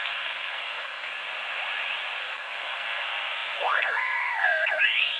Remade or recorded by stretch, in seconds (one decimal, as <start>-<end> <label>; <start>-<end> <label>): 0.0-1.1 remade; 1.1-2.2 recorded; 2.2-5.2 remade